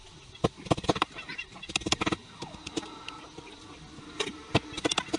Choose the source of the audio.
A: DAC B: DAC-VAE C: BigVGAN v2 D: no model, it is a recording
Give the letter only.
D